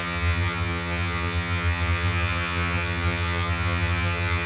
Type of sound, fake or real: fake